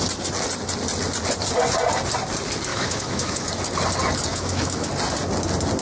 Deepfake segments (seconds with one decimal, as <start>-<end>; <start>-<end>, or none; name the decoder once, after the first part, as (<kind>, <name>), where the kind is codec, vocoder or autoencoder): 2.7-3.5 (autoencoder, DAC-VAE); 4.3-4.9